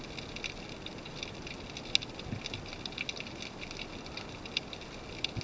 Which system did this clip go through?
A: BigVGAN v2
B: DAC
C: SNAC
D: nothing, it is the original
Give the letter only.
D